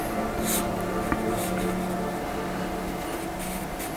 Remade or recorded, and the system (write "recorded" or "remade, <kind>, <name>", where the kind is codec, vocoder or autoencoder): recorded